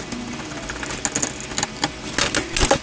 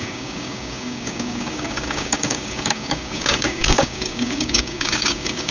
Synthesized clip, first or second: second